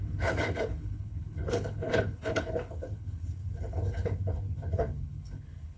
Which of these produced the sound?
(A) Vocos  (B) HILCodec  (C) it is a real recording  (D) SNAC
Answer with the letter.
B